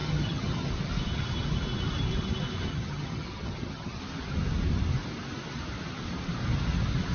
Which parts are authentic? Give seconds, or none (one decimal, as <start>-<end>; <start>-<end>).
0.7-2.7; 4.0-7.1